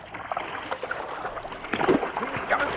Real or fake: real